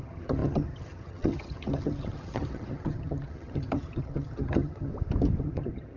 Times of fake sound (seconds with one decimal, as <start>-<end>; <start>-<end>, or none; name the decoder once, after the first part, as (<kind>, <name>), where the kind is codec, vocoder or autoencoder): 0.0-4.9 (vocoder, HiFi-GAN); 5.4-6.0